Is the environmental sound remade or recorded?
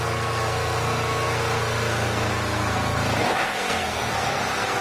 remade